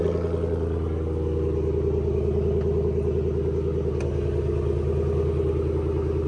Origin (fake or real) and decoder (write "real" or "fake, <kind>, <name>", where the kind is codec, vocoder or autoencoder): real